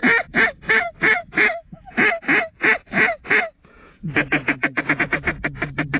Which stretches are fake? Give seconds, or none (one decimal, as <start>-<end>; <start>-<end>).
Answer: 0.0-1.9; 2.6-5.0